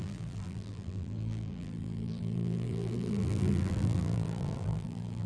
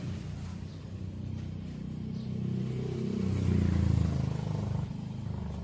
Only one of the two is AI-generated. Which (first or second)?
first